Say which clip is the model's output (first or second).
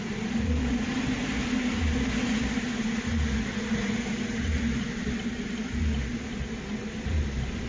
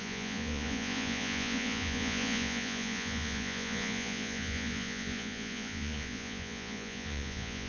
second